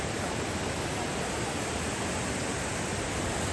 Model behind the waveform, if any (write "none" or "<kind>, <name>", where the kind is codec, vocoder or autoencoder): none